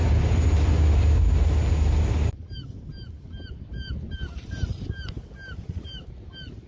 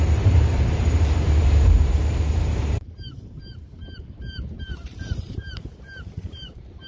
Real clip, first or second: first